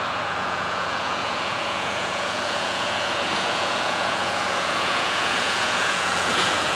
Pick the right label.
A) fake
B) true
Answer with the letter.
A